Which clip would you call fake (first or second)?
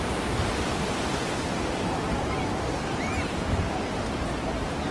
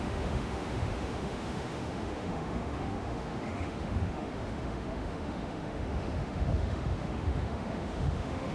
second